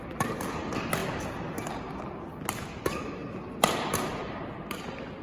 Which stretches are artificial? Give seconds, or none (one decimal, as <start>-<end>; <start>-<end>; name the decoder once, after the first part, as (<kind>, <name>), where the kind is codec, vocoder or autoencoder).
none